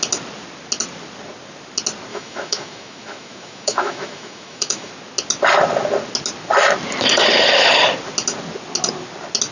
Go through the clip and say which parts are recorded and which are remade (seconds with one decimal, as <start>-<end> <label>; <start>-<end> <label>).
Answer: 0.0-2.1 recorded; 2.1-4.9 remade; 4.9-9.5 recorded